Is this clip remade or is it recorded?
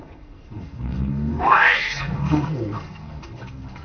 remade